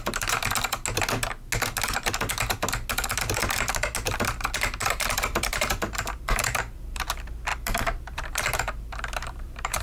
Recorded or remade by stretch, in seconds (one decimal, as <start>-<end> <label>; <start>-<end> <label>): 0.0-0.4 remade; 0.4-4.9 recorded; 4.9-9.8 remade